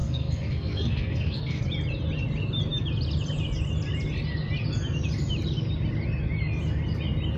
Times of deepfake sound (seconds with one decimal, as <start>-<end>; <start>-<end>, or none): 0.0-1.6